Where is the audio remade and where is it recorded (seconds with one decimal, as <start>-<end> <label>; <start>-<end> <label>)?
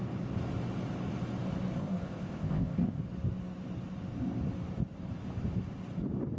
0.0-1.8 recorded; 1.8-3.0 remade; 3.0-6.4 recorded